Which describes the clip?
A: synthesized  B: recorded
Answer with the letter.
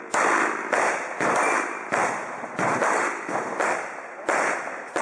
A